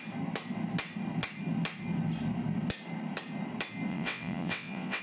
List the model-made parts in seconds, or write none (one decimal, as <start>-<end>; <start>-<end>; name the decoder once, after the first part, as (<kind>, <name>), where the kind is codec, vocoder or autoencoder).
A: 3.9-5.0 (vocoder, WaveNeXt)